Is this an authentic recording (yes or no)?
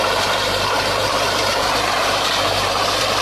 no